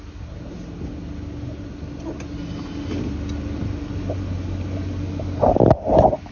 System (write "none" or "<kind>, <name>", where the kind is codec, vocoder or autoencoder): none